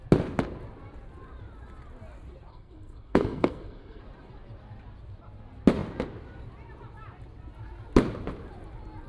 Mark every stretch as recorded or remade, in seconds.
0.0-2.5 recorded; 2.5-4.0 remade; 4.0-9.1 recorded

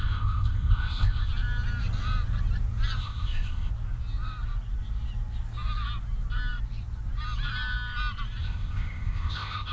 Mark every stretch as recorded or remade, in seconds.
0.0-1.3 remade; 1.3-3.0 recorded; 3.0-3.7 remade; 3.7-8.4 recorded; 8.4-9.7 remade